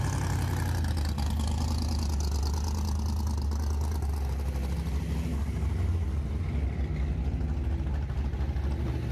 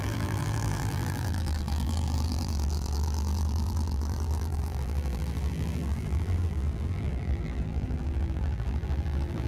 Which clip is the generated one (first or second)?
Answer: second